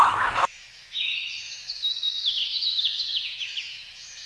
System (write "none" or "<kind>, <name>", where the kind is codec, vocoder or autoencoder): autoencoder, DAC-VAE